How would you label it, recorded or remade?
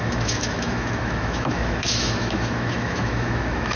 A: remade